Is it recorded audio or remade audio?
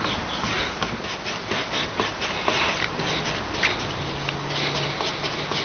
recorded